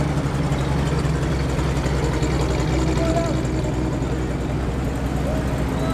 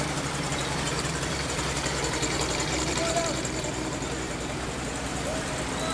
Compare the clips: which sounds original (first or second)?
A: first